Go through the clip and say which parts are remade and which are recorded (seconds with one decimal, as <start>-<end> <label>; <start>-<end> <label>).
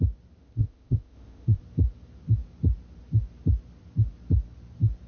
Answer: 0.0-0.4 recorded; 0.4-1.6 remade; 1.6-5.1 recorded